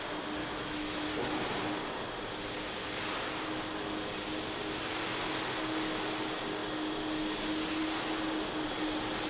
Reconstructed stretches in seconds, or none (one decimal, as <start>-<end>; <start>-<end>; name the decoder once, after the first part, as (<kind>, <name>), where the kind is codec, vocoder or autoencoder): 0.4-1.1 (autoencoder, DAC-VAE)